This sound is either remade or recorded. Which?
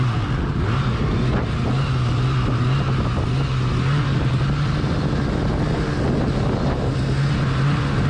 recorded